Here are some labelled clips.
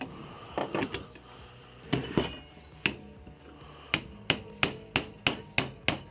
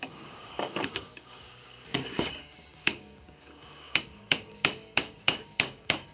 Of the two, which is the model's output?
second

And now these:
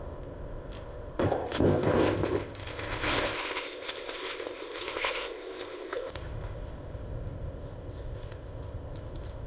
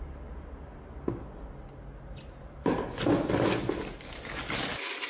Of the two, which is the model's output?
first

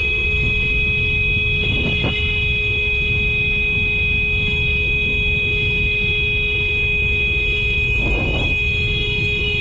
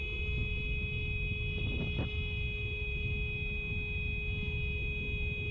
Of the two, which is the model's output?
first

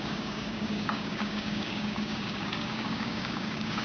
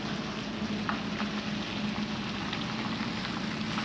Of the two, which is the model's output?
first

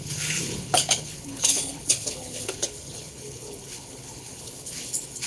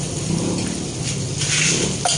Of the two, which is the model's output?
first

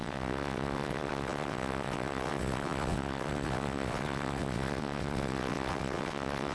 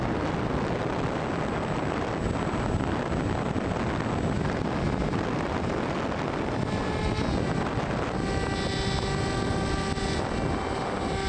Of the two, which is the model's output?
first